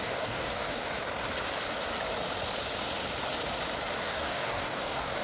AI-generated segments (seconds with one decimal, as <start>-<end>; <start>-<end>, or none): 0.0-0.9; 4.0-5.2